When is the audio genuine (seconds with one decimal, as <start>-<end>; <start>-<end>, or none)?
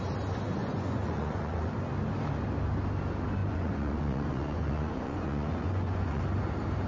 0.0-0.6; 1.7-3.4; 6.2-6.9